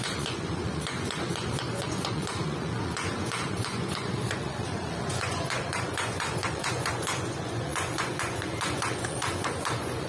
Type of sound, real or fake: fake